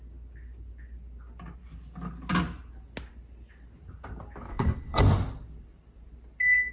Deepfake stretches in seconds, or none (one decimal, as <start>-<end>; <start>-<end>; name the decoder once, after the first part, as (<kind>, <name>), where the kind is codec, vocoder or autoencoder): 4.5-5.0 (vocoder, WaveNeXt)